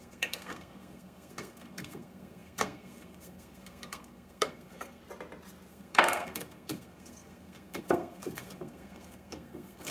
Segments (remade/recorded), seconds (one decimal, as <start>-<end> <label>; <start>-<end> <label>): 0.0-5.0 remade; 5.0-5.7 recorded; 5.7-9.9 remade